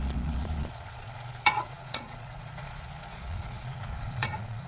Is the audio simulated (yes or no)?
yes